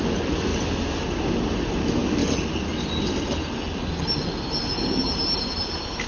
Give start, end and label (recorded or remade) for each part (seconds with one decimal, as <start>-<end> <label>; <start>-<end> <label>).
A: 0.0-6.1 recorded